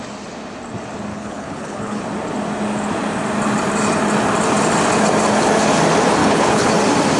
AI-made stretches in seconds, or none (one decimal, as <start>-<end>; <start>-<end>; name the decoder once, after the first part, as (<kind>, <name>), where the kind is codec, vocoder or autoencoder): 1.1-2.0 (codec, HILCodec); 6.2-6.7